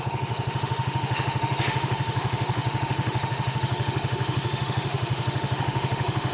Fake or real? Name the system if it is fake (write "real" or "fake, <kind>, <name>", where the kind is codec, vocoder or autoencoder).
fake, autoencoder, DAC-VAE